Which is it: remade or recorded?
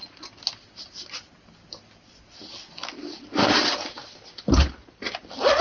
recorded